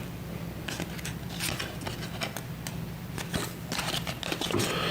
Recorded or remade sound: recorded